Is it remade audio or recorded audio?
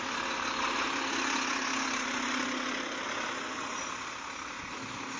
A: recorded